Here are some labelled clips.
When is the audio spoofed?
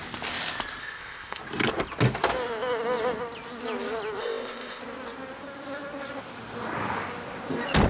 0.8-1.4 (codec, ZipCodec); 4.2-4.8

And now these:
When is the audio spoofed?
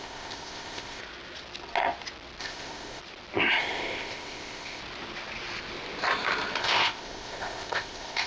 0.0-1.0 (codec, ZipCodec); 2.4-3.0; 3.6-4.8; 6.6-8.3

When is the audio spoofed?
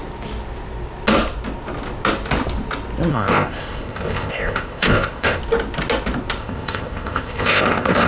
3.1-5.4 (codec, ZipCodec); 6.4-8.1